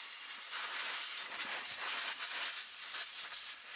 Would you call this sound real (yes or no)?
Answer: yes